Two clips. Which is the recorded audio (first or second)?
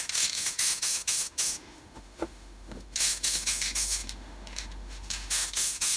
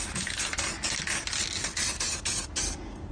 second